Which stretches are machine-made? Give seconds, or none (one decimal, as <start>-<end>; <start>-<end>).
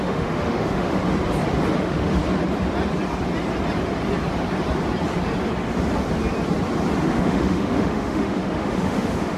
0.0-1.0; 1.8-2.2; 7.0-9.4